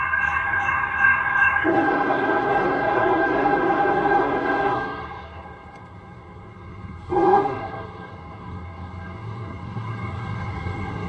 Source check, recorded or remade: remade